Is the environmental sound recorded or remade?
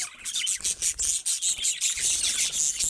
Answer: recorded